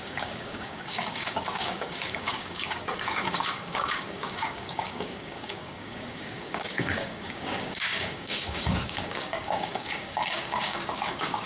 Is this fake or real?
fake